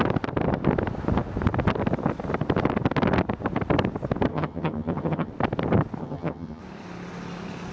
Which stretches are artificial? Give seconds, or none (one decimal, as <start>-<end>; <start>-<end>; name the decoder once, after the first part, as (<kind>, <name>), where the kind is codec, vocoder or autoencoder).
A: 4.3-5.3 (vocoder, HiFi-GAN); 6.0-6.6